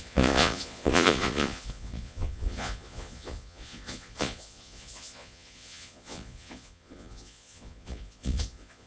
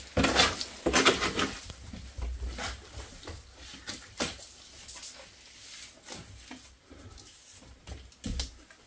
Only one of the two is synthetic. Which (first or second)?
first